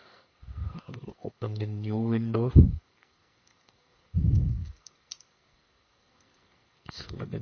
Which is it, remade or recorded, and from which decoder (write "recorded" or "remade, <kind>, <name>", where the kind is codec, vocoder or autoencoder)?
remade, codec, SNAC